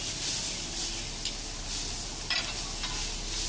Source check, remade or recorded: recorded